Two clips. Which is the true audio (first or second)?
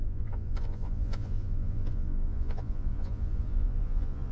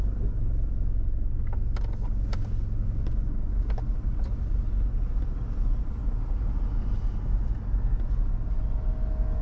second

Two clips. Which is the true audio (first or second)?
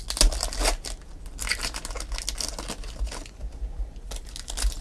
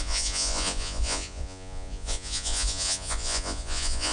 first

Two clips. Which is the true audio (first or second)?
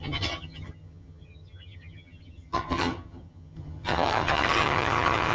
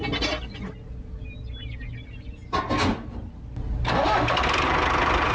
second